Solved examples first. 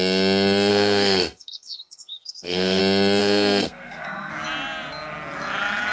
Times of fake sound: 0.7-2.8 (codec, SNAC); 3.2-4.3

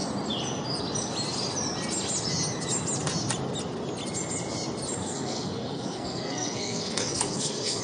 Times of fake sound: 5.0-7.8 (codec, SNAC)

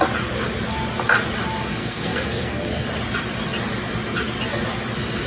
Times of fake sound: 1.7-2.9 (codec, SNAC)

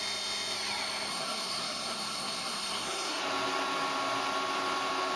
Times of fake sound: 1.1-3.2 (codec, SNAC)

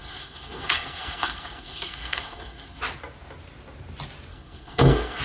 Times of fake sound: 0.0-2.8 (codec, SNAC); 4.3-5.2

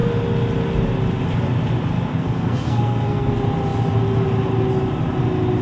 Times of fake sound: 2.1-3.3 (codec, SNAC)

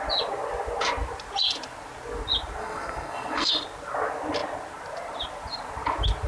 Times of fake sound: 2.6-3.5 (codec, SNAC)

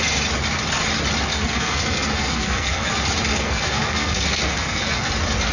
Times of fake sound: 1.3-2.9 (codec, SNAC); 3.3-5.1